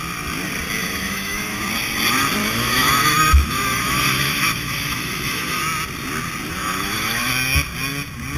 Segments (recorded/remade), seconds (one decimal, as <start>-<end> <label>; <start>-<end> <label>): 0.0-0.8 recorded; 0.8-1.6 remade; 1.6-2.4 recorded; 2.4-5.6 remade; 5.6-6.6 recorded; 6.6-7.3 remade; 7.3-8.4 recorded